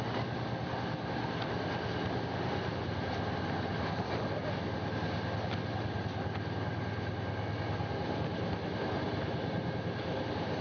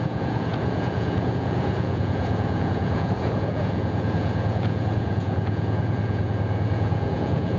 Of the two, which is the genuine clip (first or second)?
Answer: first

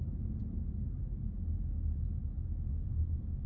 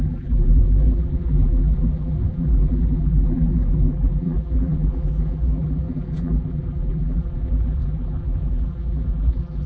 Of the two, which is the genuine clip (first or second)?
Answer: first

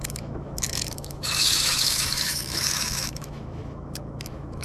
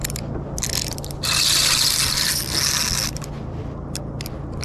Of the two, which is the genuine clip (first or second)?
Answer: second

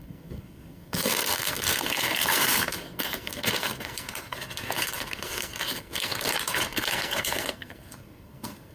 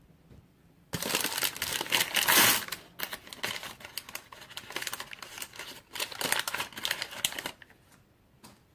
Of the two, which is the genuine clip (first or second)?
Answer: second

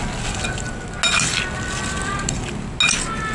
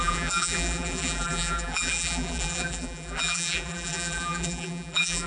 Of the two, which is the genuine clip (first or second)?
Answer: first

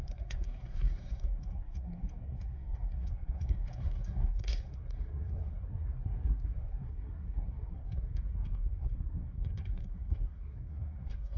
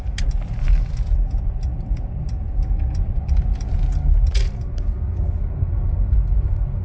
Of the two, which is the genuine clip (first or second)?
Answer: second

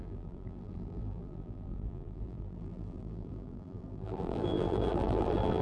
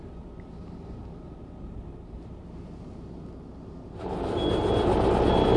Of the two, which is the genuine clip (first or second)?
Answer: second